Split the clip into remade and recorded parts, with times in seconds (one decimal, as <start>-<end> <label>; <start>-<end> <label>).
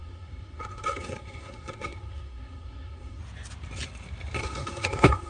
0.0-3.2 remade; 3.2-4.4 recorded; 4.4-5.3 remade